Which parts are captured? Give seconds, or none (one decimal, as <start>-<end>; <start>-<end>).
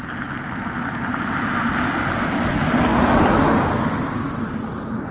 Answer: 0.0-0.4; 1.4-5.1